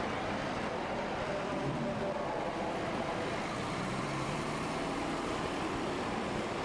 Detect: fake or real fake